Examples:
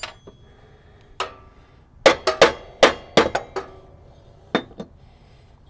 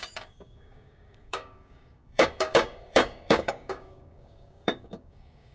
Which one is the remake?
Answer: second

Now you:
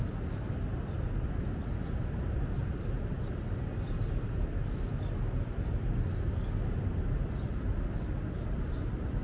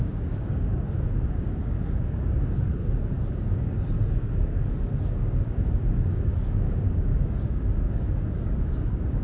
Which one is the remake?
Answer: second